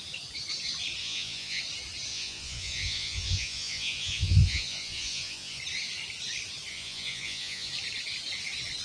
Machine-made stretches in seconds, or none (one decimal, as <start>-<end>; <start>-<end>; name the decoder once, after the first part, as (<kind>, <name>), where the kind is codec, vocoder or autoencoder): 1.0-1.6 (vocoder, Vocos); 2.1-5.6; 6.7-7.7